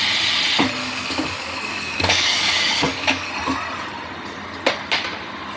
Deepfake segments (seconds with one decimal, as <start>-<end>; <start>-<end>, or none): 0.8-3.3